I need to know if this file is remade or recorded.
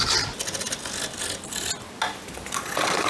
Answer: recorded